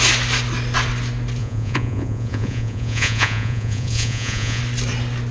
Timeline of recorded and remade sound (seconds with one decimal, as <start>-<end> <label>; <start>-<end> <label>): 0.0-1.4 recorded; 1.4-4.6 remade; 4.6-5.3 recorded